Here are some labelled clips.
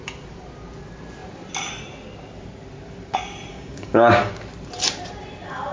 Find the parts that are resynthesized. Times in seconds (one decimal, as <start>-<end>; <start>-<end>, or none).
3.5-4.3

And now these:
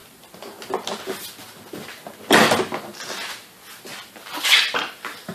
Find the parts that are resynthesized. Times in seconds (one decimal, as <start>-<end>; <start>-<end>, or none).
none

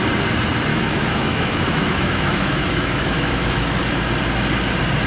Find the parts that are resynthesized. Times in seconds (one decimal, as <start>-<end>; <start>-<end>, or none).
0.7-3.8

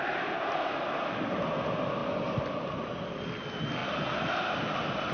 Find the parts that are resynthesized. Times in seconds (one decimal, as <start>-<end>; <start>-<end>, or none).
none

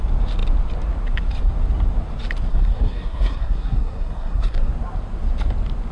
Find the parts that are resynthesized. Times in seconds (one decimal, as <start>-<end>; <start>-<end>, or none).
2.5-4.7

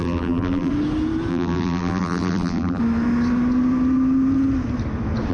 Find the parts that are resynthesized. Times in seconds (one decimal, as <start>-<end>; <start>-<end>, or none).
0.0-0.7; 1.3-2.8

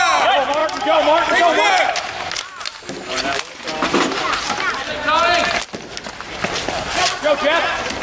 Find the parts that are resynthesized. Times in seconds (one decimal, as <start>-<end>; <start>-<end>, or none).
none

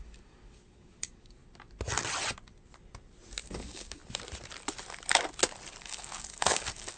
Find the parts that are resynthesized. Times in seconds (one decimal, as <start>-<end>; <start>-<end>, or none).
0.0-1.4; 3.4-4.0; 5.8-7.0